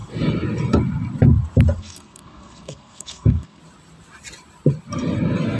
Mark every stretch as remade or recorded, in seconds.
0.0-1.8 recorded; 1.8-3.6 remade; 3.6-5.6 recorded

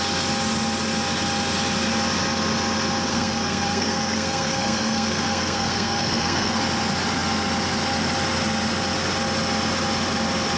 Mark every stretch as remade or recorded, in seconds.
0.0-3.1 recorded; 3.1-6.6 remade; 6.6-10.6 recorded

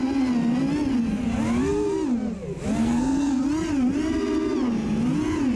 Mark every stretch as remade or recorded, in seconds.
0.0-2.8 recorded; 2.8-3.4 remade; 3.4-5.6 recorded

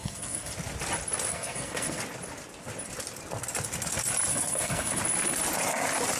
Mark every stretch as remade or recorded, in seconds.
0.0-0.5 remade; 0.5-1.3 recorded; 1.3-2.0 remade; 2.0-4.3 recorded; 4.3-5.0 remade; 5.0-6.2 recorded

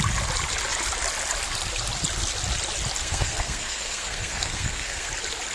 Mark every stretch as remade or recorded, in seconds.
0.0-3.0 recorded; 3.0-5.1 remade; 5.1-5.5 recorded